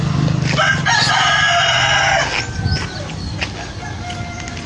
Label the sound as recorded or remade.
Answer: recorded